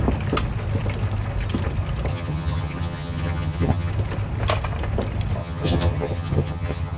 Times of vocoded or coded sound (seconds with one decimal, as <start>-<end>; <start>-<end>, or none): 2.1-3.9; 5.4-7.0